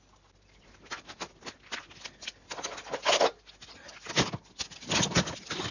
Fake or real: real